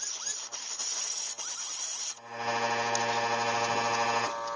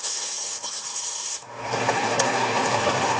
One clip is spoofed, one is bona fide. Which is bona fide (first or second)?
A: first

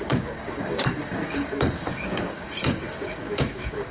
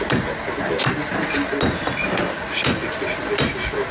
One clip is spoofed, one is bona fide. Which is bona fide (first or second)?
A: second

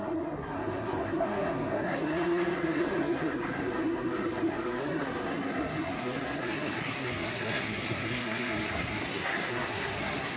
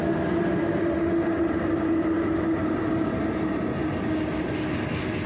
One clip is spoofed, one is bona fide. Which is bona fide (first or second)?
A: second